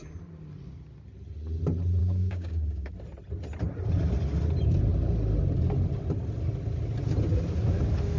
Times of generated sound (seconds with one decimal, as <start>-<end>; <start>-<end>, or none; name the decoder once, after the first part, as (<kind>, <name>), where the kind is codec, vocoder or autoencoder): 2.0-2.9 (codec, DAC)